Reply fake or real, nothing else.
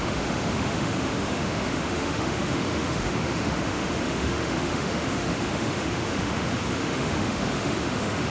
fake